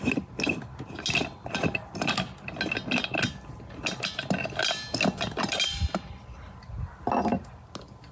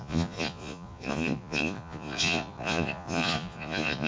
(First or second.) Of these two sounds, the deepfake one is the second